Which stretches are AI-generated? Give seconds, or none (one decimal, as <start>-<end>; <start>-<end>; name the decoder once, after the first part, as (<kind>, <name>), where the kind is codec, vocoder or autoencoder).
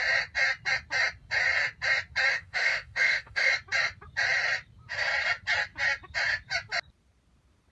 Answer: 2.3-3.5 (autoencoder, DAC-VAE)